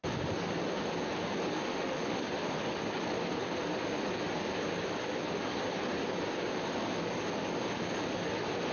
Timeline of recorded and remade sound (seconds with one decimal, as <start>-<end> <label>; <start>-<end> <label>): 0.0-1.7 recorded; 1.7-2.2 remade; 2.2-8.7 recorded